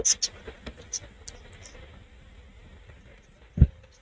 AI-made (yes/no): no